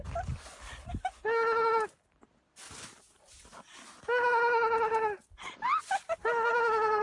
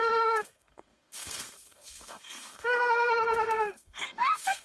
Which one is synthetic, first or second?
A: second